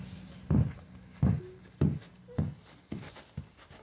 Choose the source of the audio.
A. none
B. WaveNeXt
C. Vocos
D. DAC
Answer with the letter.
A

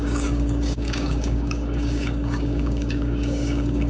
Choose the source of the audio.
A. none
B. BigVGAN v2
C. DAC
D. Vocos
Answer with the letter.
C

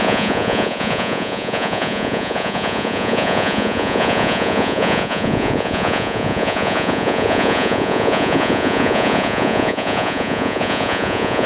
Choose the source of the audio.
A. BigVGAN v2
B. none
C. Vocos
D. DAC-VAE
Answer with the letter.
C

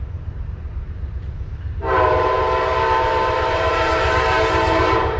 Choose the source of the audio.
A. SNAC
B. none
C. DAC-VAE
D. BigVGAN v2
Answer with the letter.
D